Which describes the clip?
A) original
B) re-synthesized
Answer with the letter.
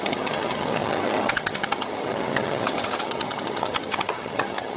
B